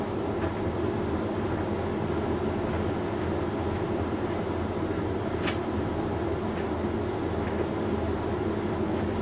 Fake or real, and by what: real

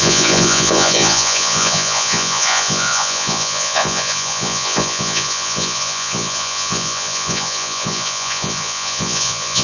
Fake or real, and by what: fake, vocoder, Vocos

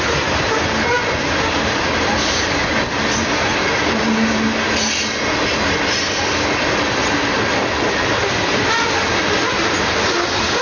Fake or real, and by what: real